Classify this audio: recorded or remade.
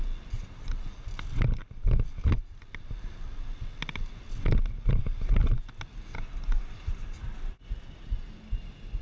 recorded